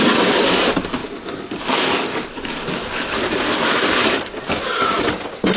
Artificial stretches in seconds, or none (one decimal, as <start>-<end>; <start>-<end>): 1.0-4.2